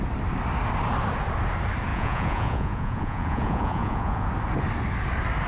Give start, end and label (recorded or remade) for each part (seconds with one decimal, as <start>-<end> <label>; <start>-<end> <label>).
0.0-1.9 recorded; 1.9-4.3 remade; 4.3-5.5 recorded